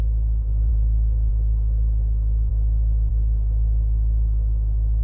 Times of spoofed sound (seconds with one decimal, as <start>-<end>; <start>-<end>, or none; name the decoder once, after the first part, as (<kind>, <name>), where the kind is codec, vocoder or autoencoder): 0.7-1.3 (autoencoder, DAC-VAE)

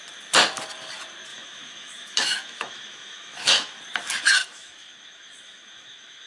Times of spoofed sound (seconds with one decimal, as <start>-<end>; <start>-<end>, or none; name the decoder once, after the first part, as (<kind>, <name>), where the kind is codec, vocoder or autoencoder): 1.3-3.8 (autoencoder, DAC-VAE); 4.4-6.3

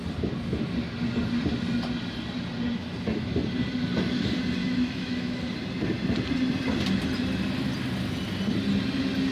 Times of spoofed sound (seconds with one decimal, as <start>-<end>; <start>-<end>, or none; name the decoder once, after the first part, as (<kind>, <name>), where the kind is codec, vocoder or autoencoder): 4.6-5.4 (autoencoder, DAC-VAE)

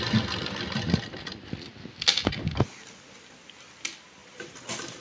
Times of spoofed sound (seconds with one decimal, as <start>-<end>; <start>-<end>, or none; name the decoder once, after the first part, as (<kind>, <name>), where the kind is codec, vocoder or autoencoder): none

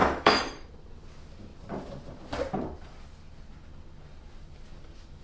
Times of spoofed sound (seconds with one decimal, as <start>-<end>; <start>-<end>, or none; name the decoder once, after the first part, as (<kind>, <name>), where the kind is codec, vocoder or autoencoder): 0.0-0.7 (autoencoder, DAC-VAE)

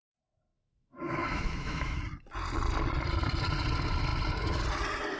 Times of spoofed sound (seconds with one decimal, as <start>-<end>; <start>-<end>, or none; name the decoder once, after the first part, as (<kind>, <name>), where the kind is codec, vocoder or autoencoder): 0.5-2.0 (autoencoder, DAC-VAE)

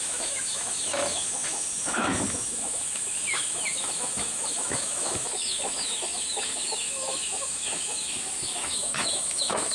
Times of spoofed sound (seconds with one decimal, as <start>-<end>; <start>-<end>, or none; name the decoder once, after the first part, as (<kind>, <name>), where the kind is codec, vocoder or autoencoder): 0.0-9.7 (autoencoder, DAC-VAE)

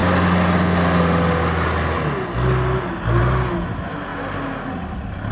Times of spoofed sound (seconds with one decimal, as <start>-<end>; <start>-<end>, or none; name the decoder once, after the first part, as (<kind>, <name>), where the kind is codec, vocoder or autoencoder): none